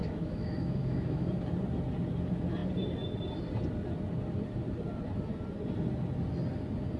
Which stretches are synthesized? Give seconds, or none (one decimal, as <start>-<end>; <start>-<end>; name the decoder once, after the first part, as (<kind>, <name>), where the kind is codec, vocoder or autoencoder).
0.0-1.3 (autoencoder, DAC-VAE)

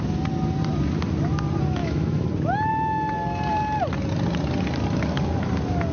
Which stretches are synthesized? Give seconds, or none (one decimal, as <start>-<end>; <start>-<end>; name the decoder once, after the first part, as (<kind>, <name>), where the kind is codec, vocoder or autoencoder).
1.8-2.3 (autoencoder, DAC-VAE)

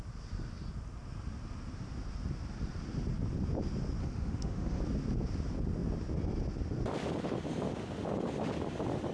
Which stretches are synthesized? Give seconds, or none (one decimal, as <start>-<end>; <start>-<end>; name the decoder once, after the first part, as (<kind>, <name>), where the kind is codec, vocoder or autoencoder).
4.0-4.8 (autoencoder, DAC-VAE)